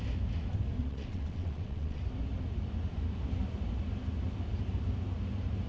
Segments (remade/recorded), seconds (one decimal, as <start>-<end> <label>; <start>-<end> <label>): 0.0-0.8 recorded; 0.8-2.0 remade; 2.0-5.7 recorded